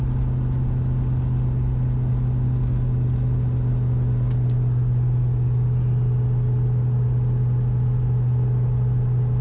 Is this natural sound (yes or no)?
yes